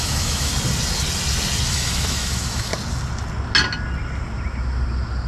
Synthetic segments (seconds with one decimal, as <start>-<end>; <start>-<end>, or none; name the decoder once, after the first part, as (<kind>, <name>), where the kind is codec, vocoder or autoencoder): 0.0-0.5 (autoencoder, DAC-VAE); 1.7-2.7